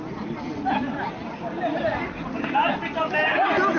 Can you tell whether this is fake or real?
real